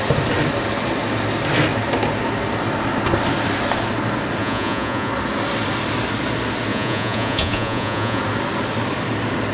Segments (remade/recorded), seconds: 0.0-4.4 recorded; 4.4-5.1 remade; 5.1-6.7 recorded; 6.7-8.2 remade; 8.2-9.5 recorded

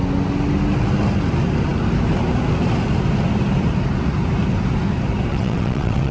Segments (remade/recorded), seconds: 0.0-5.3 recorded; 5.3-6.1 remade

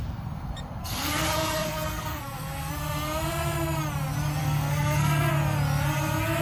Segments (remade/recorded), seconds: 0.0-0.8 recorded; 0.8-2.7 remade; 2.7-4.4 recorded; 4.4-5.3 remade; 5.3-6.4 recorded

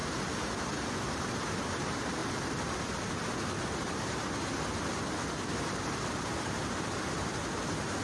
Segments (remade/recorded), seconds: 0.0-0.6 recorded; 0.6-2.2 remade; 2.2-5.6 recorded; 5.6-8.0 remade